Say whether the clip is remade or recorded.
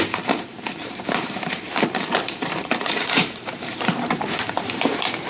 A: remade